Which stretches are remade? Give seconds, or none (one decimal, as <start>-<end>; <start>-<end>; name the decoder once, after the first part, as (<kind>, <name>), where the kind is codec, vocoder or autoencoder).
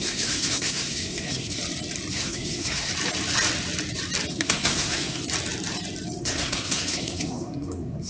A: 0.0-1.6 (codec, SNAC); 2.1-2.9; 4.3-5.2; 6.2-8.1